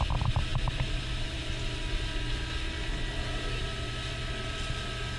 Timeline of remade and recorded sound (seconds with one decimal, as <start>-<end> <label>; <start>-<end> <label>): 0.0-5.2 recorded